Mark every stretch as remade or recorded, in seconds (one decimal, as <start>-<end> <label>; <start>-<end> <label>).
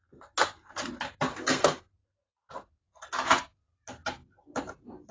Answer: 0.0-1.3 recorded; 1.3-1.9 remade; 1.9-5.1 recorded